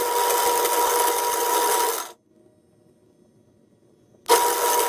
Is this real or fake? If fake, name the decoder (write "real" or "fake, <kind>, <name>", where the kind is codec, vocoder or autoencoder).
real